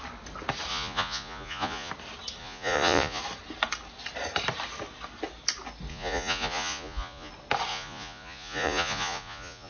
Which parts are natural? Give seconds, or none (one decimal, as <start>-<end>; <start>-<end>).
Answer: 0.0-0.7; 1.9-2.4; 3.2-5.9; 7.3-7.7